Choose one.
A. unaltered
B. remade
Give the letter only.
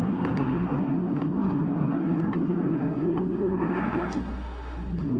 B